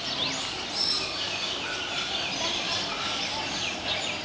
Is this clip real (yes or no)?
yes